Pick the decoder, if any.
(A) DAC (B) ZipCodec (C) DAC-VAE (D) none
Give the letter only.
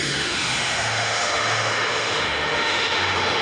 C